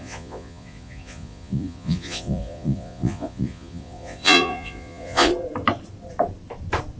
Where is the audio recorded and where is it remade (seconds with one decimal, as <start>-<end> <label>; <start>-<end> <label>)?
0.0-5.3 remade; 5.3-7.0 recorded